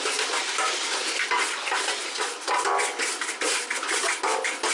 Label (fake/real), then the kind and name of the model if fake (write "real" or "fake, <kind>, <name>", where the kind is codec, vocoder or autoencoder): real